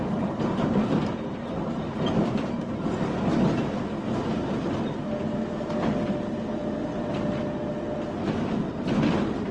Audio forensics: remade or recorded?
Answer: recorded